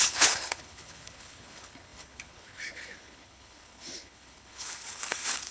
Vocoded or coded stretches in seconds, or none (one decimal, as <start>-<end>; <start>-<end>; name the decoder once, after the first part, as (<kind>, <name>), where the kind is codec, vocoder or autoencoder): 0.0-5.5 (codec, HILCodec)